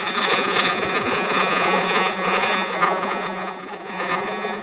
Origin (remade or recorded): remade